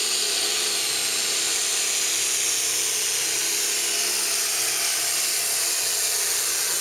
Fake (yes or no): no